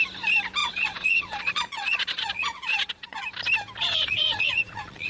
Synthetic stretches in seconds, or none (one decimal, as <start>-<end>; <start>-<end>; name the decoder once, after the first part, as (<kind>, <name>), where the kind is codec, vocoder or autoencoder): 0.6-3.2 (vocoder, Vocos); 3.8-5.1